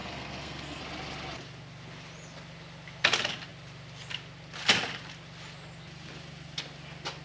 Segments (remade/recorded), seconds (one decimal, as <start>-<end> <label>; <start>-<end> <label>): 0.0-0.8 remade; 0.8-7.2 recorded